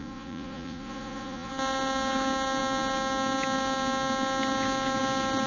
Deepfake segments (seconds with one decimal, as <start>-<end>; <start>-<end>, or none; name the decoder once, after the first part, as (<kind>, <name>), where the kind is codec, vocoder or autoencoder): 0.0-1.5 (vocoder, Vocos)